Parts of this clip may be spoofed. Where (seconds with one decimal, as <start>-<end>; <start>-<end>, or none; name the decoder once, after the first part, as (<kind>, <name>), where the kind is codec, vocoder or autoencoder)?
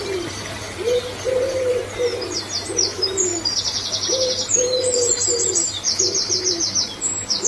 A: 0.0-3.3 (vocoder, BigVGAN v2); 5.5-7.5